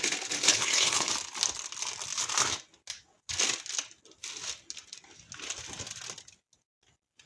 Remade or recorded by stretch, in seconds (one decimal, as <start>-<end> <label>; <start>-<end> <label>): 0.0-0.5 recorded; 0.5-1.1 remade; 1.1-7.3 recorded